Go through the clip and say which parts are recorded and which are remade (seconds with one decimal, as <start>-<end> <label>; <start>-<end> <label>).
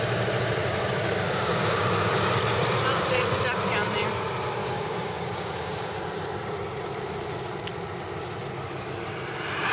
0.0-0.6 recorded; 0.6-2.3 remade; 2.3-4.6 recorded; 4.6-6.0 remade; 6.0-9.7 recorded